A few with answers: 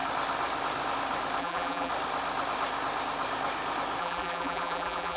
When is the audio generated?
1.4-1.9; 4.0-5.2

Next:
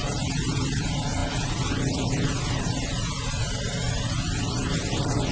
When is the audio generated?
none

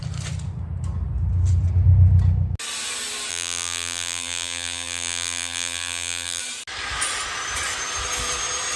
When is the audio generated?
3.3-6.4

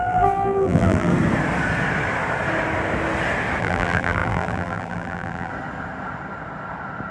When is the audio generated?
0.0-1.1; 3.6-5.5

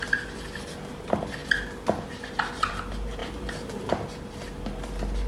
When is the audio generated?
none

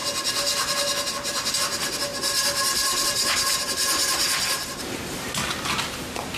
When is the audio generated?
2.1-5.3

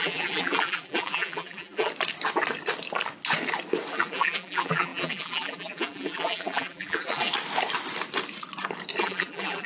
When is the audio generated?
0.0-1.9; 3.9-7.3; 9.0-9.7

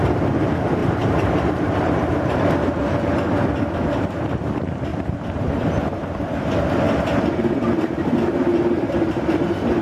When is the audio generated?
0.8-2.5; 4.9-6.5